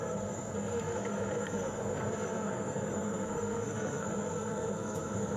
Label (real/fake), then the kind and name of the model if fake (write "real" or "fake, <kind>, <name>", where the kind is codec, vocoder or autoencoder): fake, codec, SNAC